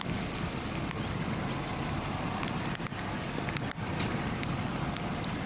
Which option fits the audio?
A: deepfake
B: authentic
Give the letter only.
B